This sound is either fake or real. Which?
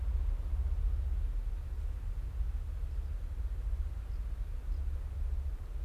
real